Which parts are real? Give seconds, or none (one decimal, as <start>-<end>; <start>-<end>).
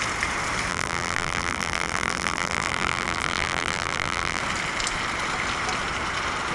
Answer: 0.0-0.7; 4.4-6.5